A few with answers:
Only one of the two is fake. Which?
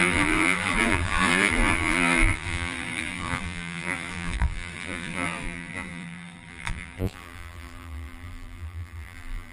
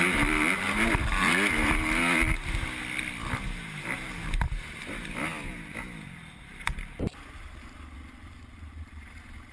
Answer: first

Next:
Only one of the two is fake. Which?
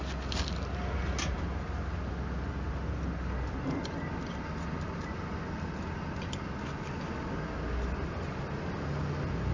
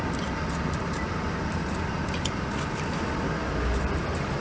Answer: second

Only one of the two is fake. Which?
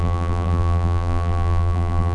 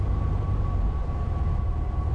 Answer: first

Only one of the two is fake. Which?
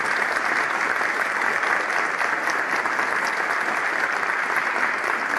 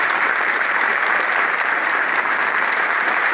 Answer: second